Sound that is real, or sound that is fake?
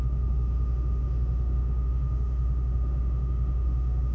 fake